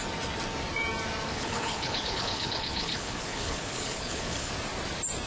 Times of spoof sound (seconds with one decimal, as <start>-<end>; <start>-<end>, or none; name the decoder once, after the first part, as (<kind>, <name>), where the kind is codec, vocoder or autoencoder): 1.3-4.5 (codec, HILCodec)